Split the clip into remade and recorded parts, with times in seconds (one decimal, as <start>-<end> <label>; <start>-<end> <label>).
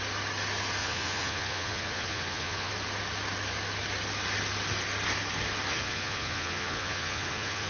0.0-0.8 recorded; 0.8-2.7 remade; 2.7-5.7 recorded; 5.7-7.7 remade